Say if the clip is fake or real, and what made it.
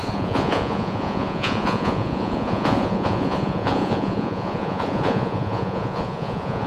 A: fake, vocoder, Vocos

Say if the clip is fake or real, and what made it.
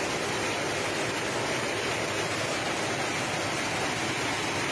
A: real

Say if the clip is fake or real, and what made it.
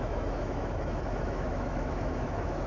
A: fake, autoencoder, DAC-VAE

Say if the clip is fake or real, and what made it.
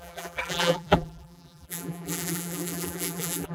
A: fake, vocoder, BigVGAN v2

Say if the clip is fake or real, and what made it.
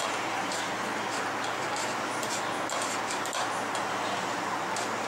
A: real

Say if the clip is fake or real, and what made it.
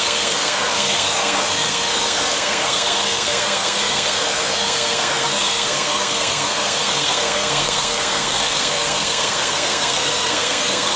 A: fake, codec, SNAC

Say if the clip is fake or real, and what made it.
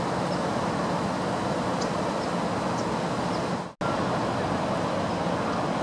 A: real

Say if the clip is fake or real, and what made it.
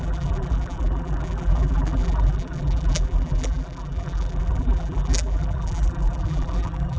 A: fake, vocoder, BigVGAN v2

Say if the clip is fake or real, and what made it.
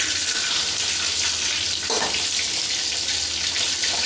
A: real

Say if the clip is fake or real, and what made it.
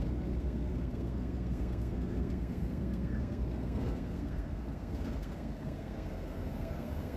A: fake, codec, SNAC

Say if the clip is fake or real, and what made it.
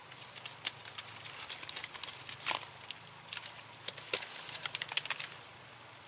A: real